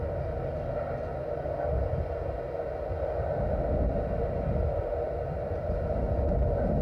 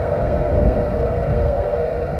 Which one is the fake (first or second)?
second